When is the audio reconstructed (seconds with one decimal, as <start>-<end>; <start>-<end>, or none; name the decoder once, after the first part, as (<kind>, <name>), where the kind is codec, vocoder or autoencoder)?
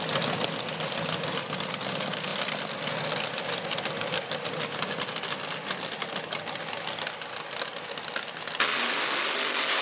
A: none